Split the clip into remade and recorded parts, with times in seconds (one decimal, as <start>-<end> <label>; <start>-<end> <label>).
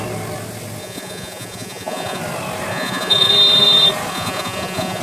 0.0-0.8 recorded; 0.8-2.2 remade; 2.2-2.7 recorded; 2.7-3.3 remade; 3.3-4.1 recorded; 4.1-5.0 remade